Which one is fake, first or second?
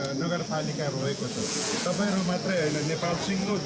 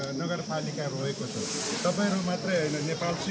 first